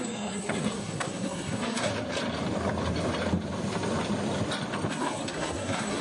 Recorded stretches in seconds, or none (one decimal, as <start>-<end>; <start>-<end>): 1.9-4.9